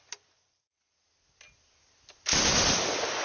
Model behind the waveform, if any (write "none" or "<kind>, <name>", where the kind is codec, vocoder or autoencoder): none